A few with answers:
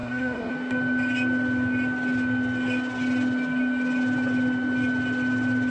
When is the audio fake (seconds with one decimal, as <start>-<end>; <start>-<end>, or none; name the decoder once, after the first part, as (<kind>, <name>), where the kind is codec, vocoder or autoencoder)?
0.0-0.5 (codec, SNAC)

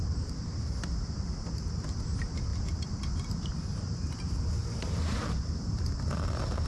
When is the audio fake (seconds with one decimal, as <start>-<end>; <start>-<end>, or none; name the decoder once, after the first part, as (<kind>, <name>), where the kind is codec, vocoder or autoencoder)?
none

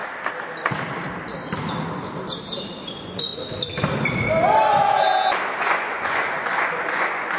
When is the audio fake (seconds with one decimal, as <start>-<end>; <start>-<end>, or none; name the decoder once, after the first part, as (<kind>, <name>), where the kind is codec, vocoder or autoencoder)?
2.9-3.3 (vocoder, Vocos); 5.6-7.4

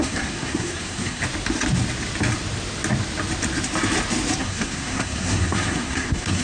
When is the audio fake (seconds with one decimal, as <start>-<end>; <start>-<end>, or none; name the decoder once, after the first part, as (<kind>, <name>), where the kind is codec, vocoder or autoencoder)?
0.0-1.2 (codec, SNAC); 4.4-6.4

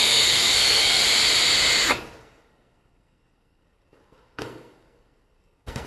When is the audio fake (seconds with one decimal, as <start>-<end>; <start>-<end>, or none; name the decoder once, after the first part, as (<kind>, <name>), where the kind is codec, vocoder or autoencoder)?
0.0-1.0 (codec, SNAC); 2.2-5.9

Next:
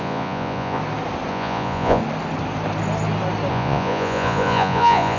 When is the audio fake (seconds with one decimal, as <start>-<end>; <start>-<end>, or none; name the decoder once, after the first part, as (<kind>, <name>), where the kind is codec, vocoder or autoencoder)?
0.0-0.8 (vocoder, Vocos); 1.3-2.0; 3.5-5.2

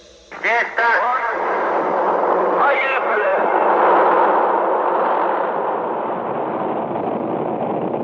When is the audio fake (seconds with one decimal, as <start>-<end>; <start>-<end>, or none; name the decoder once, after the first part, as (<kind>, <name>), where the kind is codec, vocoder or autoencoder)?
0.0-3.3 (vocoder, BigVGAN v2); 7.6-8.0